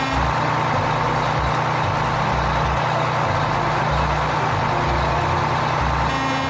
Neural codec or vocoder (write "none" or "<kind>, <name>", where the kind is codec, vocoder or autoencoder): none